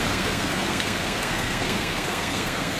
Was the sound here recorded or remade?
remade